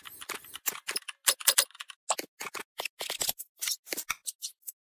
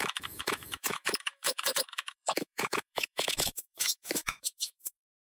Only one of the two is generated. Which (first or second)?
second